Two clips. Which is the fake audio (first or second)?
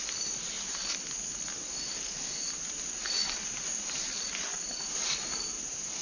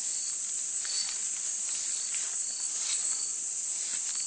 second